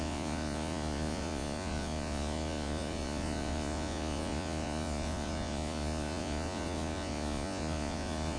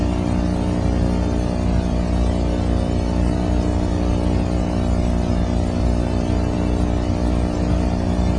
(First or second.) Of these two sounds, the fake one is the first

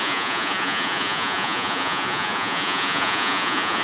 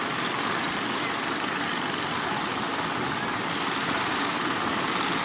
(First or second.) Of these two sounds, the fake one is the first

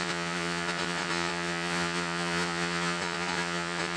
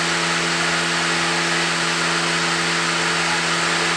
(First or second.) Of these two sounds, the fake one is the first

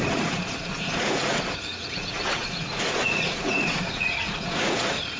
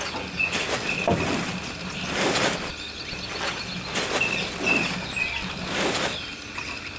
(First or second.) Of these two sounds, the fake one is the first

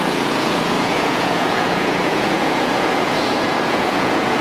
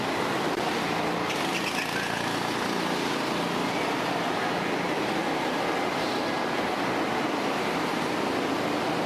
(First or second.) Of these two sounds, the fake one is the first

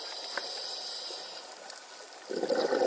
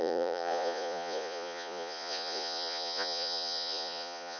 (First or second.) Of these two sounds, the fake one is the second